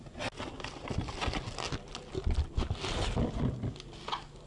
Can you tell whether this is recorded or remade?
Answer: recorded